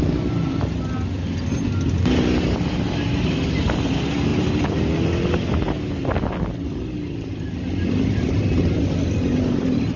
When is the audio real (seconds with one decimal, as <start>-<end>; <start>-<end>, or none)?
0.0-10.0